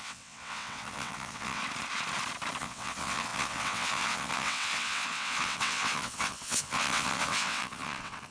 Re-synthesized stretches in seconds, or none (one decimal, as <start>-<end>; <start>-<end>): 0.0-1.6; 2.6-8.3